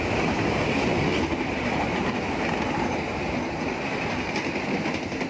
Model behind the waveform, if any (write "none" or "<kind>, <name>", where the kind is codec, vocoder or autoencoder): none